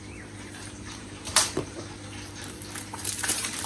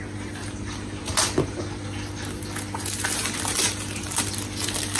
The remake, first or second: first